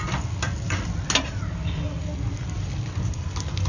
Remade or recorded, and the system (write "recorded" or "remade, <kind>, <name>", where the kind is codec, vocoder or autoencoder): recorded